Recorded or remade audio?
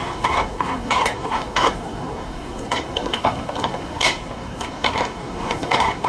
remade